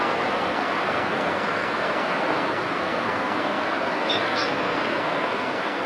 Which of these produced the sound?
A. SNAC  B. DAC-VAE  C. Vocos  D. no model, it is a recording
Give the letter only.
A